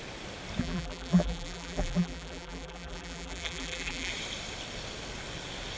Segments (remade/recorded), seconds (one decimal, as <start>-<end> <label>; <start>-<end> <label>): 0.0-0.6 recorded; 0.6-4.1 remade; 4.1-5.8 recorded